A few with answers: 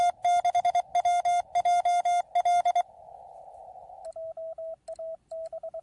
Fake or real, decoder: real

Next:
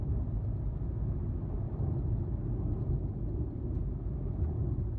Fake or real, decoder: real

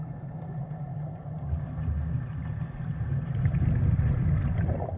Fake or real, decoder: real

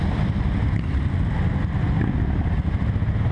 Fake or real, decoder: real